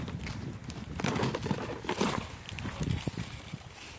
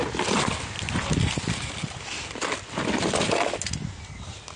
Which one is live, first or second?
second